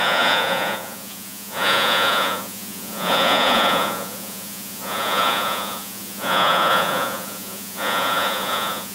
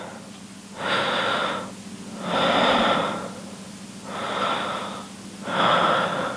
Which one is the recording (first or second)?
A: second